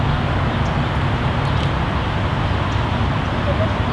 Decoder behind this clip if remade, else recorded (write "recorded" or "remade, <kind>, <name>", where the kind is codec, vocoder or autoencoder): recorded